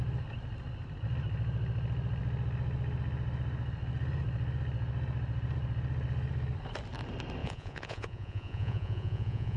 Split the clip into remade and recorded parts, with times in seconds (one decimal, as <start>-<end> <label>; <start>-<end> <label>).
0.0-7.4 recorded; 7.4-9.6 remade